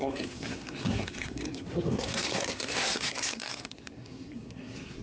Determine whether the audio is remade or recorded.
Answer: remade